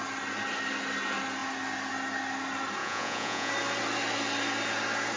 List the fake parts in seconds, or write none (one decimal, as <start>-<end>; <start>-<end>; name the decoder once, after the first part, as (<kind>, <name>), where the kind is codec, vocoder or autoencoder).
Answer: 2.8-3.5 (vocoder, Vocos)